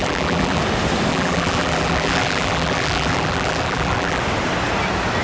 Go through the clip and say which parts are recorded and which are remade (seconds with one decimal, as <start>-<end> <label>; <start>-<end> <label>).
0.0-0.6 remade; 0.6-1.1 recorded; 1.1-4.2 remade; 4.2-5.2 recorded